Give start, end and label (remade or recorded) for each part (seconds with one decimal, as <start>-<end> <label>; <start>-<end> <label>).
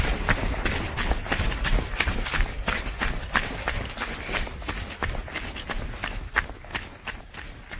0.0-7.8 recorded